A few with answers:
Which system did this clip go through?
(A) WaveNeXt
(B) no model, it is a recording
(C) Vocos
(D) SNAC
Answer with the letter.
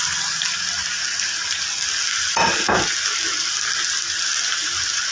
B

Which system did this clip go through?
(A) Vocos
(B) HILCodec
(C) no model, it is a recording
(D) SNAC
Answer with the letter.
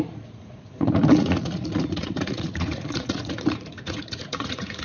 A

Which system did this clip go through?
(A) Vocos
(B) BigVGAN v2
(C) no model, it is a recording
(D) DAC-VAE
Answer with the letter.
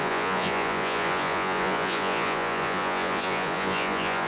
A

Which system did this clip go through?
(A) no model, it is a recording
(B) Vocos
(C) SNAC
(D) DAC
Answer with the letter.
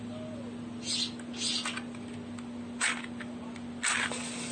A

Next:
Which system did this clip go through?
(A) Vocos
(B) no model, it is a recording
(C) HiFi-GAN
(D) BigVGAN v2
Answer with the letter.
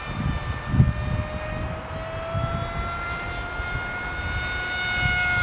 B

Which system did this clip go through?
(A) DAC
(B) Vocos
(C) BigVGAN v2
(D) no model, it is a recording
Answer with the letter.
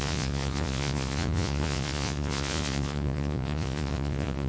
B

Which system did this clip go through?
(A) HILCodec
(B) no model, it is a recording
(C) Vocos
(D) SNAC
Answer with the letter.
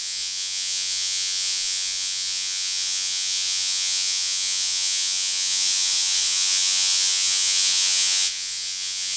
C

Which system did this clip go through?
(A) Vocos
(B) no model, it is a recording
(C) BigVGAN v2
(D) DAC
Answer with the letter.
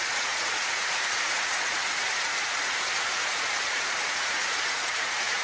A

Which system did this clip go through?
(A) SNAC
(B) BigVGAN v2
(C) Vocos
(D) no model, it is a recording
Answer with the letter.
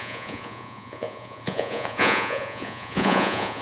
C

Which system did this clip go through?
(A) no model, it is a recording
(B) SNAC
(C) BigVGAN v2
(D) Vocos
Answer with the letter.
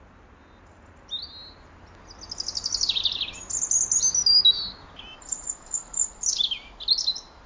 A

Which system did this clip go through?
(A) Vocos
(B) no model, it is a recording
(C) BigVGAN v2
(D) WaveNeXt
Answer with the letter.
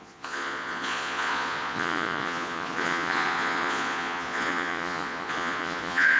A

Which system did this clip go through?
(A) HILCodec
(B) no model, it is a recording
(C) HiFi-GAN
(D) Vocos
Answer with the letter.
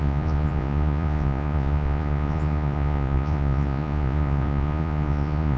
D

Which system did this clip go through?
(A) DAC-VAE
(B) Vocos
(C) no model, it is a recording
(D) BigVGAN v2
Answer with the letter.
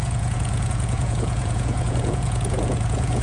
B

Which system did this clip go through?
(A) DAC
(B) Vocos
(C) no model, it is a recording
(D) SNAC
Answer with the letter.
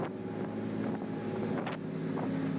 C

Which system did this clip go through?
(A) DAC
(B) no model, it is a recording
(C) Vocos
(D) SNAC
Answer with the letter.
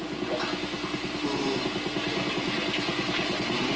B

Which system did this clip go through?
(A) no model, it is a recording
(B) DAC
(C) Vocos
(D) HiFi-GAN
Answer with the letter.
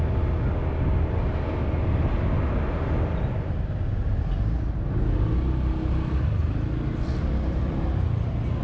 A